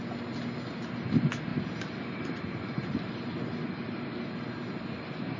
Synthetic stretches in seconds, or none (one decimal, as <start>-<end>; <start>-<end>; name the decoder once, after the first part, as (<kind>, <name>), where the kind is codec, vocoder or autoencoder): none